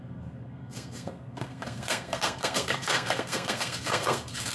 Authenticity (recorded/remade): remade